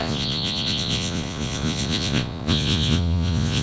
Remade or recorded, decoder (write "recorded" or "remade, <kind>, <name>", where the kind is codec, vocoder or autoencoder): remade, vocoder, Vocos